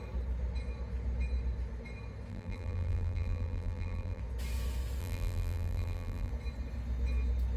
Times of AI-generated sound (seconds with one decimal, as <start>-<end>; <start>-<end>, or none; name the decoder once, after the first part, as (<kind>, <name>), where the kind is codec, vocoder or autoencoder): 2.3-4.2 (vocoder, BigVGAN v2); 5.0-6.3